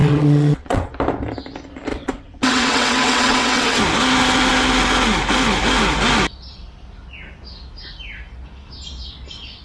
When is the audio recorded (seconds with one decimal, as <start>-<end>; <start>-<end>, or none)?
0.9-1.9; 3.8-9.6